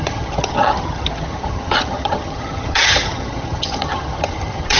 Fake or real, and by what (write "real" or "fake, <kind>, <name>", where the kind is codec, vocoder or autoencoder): fake, vocoder, HiFi-GAN